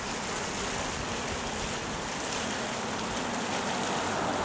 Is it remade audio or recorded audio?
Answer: recorded